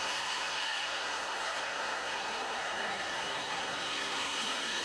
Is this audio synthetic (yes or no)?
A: yes